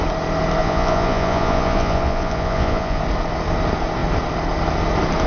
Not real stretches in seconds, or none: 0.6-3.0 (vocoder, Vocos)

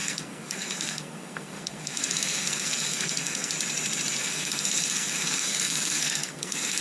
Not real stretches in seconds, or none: 0.0-3.5 (codec, SNAC); 4.2-6.8

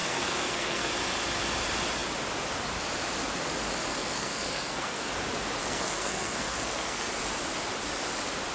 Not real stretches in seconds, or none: 0.0-0.9 (codec, SNAC); 3.9-5.1; 5.6-7.1